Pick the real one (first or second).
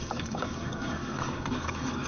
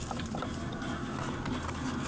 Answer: second